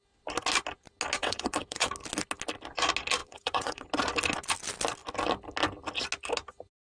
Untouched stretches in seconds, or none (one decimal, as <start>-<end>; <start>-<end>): 0.0-1.2; 1.9-3.2; 3.9-6.9

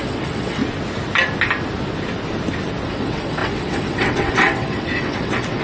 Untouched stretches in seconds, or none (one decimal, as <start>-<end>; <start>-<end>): 0.6-2.9